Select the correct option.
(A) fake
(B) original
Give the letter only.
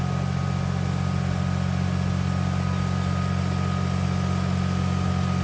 B